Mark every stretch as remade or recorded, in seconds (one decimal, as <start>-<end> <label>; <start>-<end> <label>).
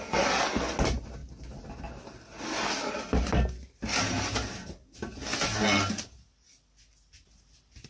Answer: 0.0-7.9 recorded